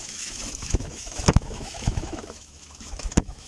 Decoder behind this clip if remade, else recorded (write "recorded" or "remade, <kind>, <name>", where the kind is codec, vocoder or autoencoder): remade, autoencoder, DAC-VAE